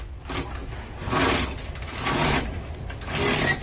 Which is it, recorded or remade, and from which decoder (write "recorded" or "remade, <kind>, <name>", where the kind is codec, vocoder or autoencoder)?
recorded